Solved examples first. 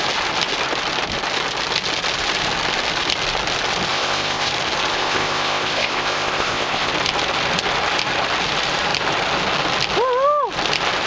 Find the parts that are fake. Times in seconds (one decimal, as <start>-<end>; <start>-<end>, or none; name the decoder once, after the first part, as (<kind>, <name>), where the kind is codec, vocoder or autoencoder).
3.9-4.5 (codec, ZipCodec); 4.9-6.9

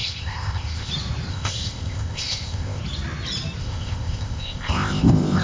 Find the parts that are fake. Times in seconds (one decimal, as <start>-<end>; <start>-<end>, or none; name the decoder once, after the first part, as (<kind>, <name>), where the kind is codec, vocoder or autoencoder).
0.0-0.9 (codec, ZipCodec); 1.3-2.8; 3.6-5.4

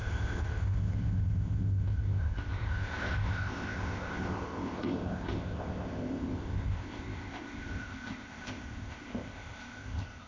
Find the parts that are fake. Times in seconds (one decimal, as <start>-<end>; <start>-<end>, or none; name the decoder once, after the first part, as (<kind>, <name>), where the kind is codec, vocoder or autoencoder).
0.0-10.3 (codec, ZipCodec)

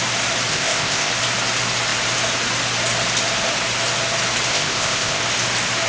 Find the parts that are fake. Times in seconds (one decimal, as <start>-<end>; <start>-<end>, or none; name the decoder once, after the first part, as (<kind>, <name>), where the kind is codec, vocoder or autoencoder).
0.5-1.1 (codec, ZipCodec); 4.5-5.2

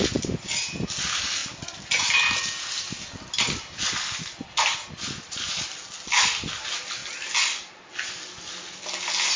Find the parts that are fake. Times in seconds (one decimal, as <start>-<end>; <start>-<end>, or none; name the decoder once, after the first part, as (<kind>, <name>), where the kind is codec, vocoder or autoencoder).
none

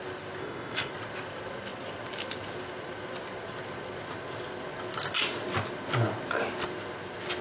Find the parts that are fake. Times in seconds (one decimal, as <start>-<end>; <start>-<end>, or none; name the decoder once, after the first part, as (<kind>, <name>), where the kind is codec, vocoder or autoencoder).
0.4-0.9 (codec, ZipCodec)